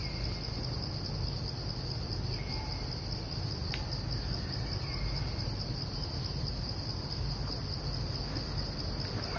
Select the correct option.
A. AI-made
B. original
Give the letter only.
B